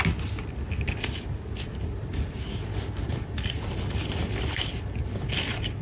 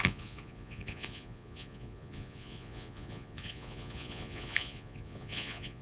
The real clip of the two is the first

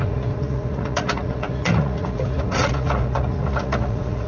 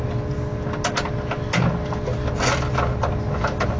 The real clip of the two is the second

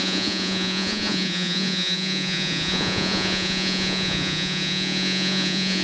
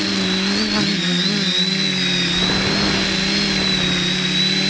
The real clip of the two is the second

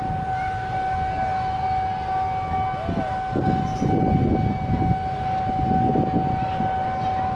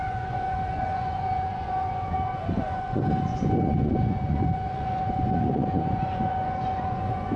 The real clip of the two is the first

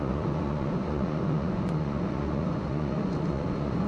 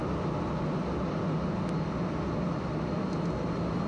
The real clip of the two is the second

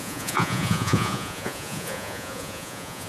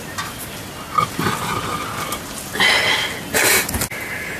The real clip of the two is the second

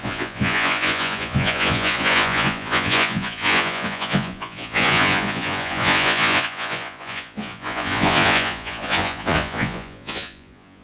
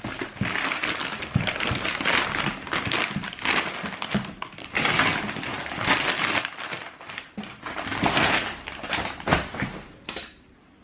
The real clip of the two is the second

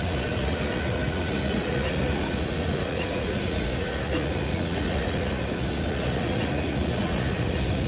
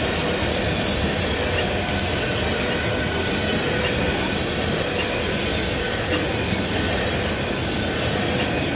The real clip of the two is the second